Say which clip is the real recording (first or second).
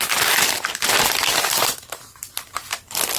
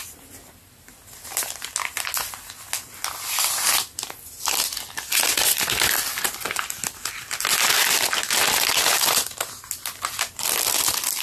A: second